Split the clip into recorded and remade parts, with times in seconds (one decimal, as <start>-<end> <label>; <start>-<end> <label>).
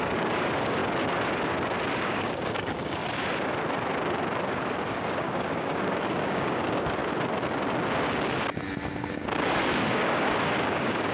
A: 0.0-0.8 remade; 0.8-2.0 recorded; 2.0-3.0 remade; 3.0-4.8 recorded; 4.8-7.0 remade; 7.0-9.1 recorded; 9.1-11.1 remade